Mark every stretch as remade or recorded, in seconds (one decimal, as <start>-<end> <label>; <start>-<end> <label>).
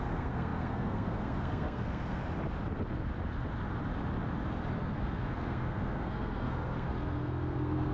0.0-2.2 remade; 2.2-4.7 recorded; 4.7-7.9 remade